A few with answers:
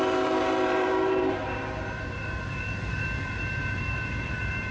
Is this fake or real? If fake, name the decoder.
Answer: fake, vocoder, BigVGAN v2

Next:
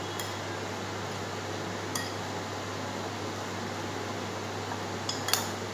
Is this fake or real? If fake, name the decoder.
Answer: real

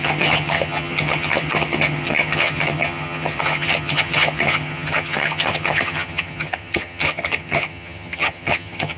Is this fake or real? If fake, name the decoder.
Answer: fake, vocoder, HiFi-GAN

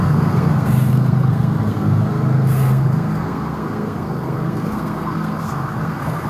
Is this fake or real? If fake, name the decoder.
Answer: fake, codec, SNAC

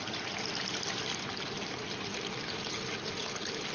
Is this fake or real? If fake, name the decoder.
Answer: real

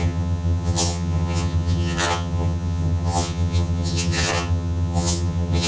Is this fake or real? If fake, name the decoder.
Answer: fake, vocoder, HiFi-GAN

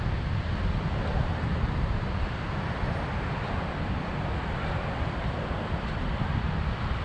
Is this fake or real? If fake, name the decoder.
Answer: fake, vocoder, BigVGAN v2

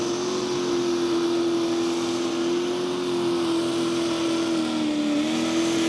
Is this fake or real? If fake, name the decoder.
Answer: real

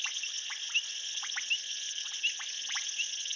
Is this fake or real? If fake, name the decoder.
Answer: real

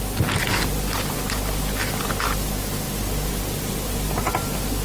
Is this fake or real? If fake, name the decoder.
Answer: real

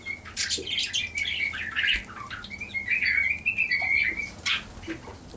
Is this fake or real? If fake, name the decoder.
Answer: real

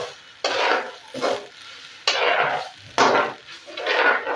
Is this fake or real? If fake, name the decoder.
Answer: real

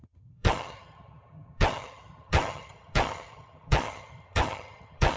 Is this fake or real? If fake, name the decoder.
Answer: fake, vocoder, HiFi-GAN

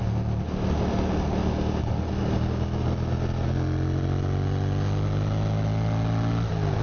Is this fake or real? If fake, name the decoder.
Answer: real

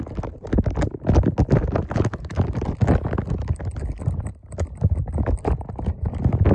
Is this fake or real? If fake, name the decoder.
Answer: real